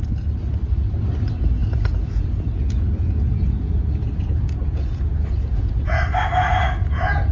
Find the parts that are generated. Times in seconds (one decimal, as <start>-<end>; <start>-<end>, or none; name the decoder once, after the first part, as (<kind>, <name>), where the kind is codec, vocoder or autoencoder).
1.6-6.0 (vocoder, Vocos)